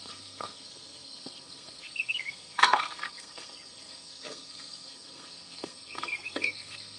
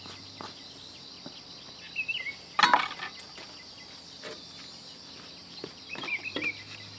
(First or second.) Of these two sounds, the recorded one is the second